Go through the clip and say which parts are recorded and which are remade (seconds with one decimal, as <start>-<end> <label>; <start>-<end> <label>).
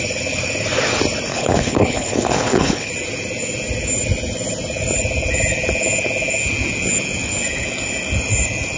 0.0-1.3 recorded; 1.3-2.9 remade; 2.9-8.8 recorded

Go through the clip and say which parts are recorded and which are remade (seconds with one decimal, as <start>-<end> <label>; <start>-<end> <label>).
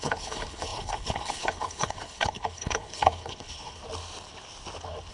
0.0-3.8 remade; 3.8-5.1 recorded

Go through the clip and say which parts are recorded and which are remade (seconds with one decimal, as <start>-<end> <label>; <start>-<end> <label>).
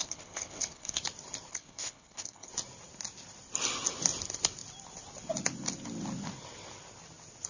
0.0-1.0 remade; 1.0-1.5 recorded; 1.5-2.5 remade; 2.5-7.5 recorded